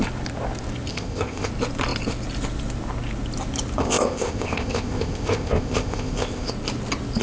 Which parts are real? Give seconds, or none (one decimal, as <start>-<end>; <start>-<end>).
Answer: 0.0-0.9; 1.5-3.8; 6.5-7.2